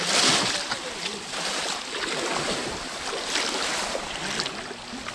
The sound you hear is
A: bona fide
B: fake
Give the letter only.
A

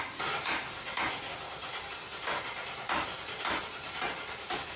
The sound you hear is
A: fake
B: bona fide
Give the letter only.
B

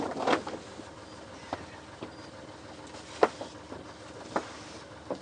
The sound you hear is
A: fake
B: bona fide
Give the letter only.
B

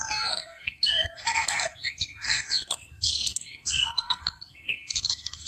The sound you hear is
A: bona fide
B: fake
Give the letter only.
B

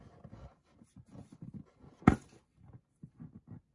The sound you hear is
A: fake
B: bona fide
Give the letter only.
B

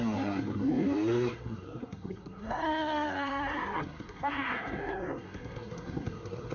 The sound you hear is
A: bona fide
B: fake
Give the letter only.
B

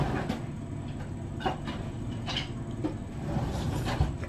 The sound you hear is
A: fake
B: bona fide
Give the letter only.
B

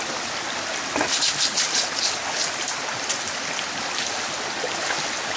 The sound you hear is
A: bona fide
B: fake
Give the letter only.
A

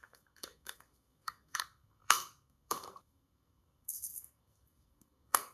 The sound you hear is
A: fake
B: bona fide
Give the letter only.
A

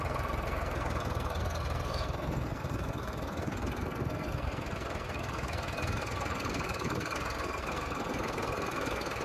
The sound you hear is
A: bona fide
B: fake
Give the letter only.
B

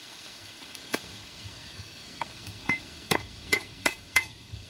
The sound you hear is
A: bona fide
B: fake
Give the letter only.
B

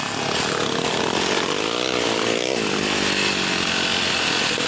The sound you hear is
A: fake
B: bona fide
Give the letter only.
B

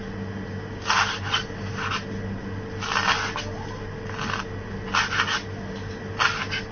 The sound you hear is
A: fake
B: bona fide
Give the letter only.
B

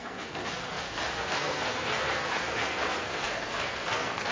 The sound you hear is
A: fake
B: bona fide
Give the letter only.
A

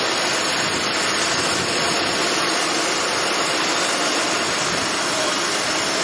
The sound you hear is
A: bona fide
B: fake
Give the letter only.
A